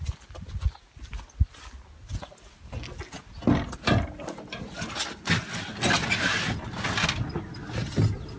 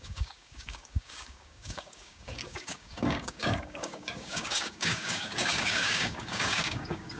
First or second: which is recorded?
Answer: first